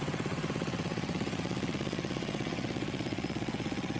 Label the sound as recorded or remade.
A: remade